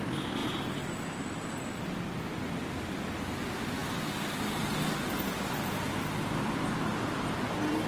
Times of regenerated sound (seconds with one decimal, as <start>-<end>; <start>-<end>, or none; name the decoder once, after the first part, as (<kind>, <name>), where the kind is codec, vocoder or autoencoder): none